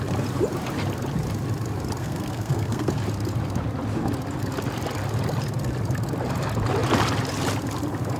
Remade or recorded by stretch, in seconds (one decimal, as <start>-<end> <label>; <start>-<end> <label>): 0.0-2.0 recorded; 2.0-2.9 remade; 2.9-8.2 recorded